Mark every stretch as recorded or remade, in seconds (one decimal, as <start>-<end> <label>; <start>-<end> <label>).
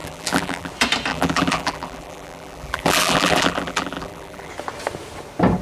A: 0.0-0.7 remade; 0.7-1.1 recorded; 1.1-4.5 remade; 4.5-5.6 recorded